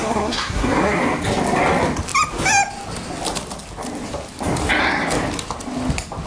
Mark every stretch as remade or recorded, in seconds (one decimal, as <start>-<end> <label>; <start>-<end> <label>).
0.0-1.0 remade; 1.0-6.3 recorded